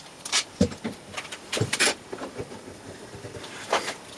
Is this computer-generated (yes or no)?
yes